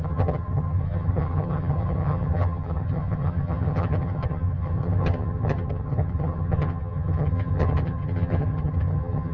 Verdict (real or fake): fake